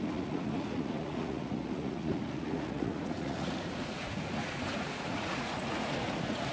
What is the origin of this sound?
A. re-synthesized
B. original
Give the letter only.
A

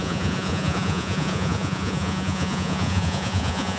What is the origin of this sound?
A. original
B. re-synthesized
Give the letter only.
B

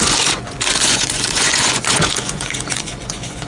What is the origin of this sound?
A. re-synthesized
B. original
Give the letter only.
A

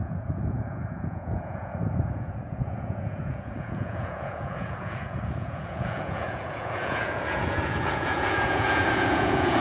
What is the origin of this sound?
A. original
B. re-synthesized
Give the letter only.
B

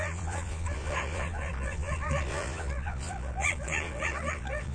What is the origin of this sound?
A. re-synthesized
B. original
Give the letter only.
A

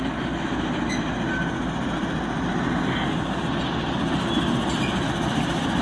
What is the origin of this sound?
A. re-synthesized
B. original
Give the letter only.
B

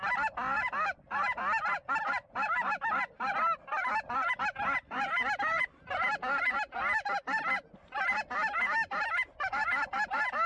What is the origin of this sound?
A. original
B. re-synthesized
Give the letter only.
A